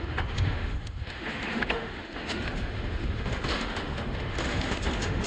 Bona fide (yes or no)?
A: no